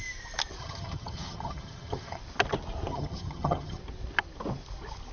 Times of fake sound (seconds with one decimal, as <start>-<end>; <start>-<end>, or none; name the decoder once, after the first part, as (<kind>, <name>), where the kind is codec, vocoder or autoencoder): 0.6-2.2 (vocoder, HiFi-GAN); 2.9-3.8